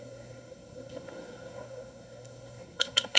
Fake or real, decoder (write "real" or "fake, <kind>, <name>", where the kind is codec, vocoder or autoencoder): fake, codec, SNAC